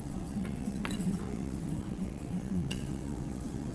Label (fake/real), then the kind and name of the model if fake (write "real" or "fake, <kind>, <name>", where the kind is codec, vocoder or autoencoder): fake, vocoder, WaveNeXt